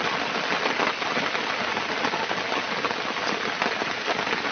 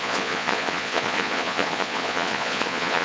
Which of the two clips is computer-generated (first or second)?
second